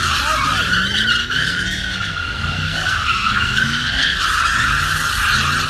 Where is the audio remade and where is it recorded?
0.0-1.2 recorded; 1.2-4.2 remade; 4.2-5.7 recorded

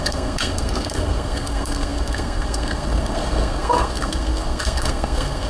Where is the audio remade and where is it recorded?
0.0-5.5 remade